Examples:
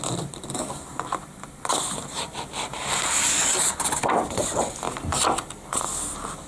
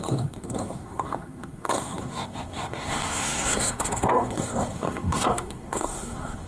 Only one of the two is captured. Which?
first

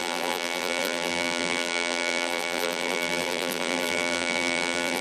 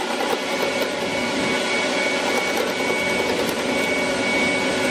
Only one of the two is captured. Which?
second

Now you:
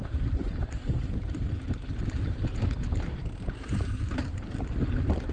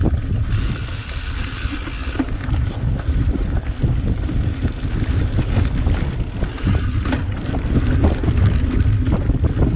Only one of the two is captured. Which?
second